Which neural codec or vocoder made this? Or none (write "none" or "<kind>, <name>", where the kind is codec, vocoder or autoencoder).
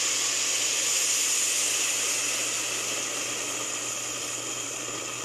none